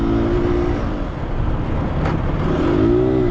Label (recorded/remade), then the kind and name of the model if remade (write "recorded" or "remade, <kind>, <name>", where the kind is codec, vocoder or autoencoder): recorded